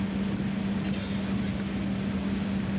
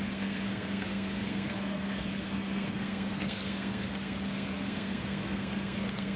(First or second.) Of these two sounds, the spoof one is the second